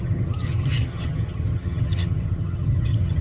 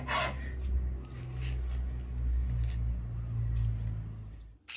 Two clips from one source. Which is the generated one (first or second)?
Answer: first